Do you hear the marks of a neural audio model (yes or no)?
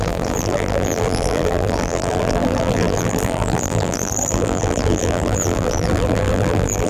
yes